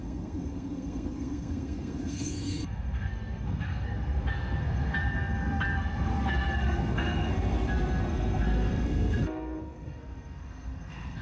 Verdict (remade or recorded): remade